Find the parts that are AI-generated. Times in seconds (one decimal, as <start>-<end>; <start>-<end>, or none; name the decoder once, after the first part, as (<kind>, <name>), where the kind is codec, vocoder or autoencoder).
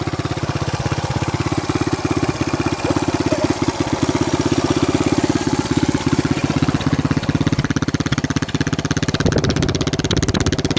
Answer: none